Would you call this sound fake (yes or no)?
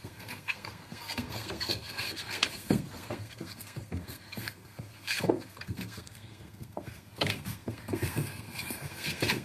yes